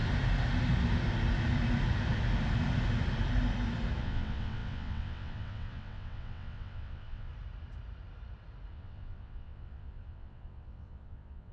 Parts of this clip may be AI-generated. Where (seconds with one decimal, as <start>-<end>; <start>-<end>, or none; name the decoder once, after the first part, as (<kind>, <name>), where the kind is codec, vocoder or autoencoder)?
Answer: 4.0-7.3 (vocoder, WaveNeXt); 8.7-11.5